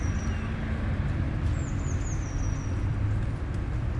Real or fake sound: real